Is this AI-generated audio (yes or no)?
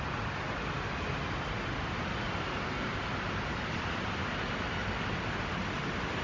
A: no